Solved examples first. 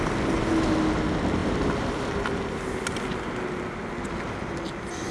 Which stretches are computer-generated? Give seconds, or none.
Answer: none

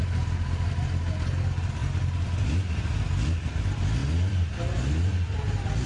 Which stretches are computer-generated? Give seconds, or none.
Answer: 0.0-0.8 (vocoder, BigVGAN v2); 1.8-2.8

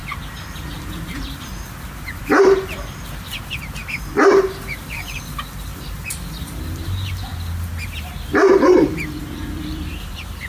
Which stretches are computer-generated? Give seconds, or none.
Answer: 0.0-7.3 (vocoder, BigVGAN v2); 9.2-10.5

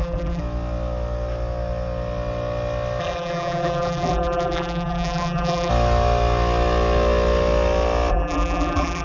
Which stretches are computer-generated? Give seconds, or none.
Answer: 0.0-0.4 (vocoder, BigVGAN v2); 3.0-5.7; 8.1-9.0

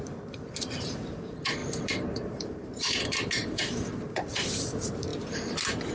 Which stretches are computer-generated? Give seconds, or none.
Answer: 0.0-5.1 (vocoder, BigVGAN v2)

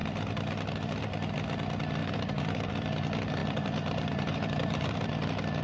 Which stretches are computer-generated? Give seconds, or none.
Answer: 2.0-2.7 (vocoder, BigVGAN v2); 3.4-5.1